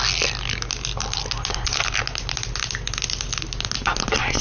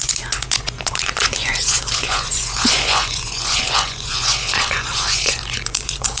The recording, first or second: first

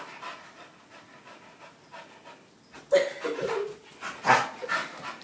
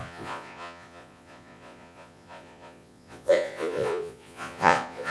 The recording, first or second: first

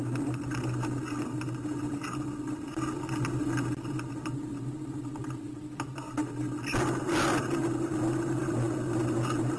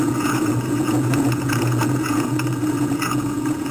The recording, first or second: first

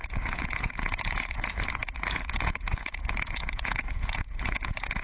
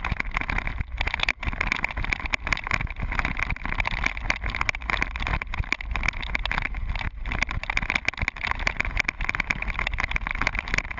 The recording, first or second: second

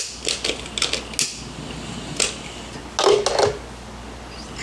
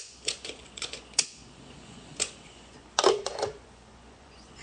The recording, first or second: first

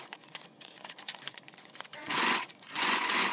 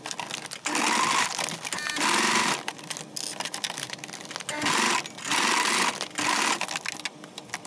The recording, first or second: second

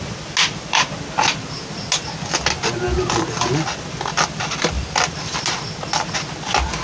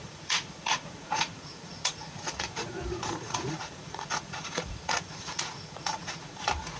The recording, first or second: first